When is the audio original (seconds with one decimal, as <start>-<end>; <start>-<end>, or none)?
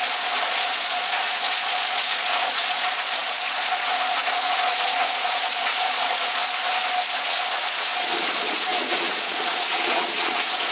6.4-7.1